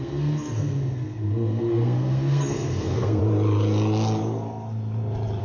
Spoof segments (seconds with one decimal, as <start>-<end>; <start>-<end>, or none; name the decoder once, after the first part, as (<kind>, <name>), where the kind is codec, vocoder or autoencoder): 0.0-3.2 (codec, SNAC)